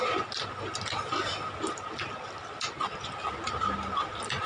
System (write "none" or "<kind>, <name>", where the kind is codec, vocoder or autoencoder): none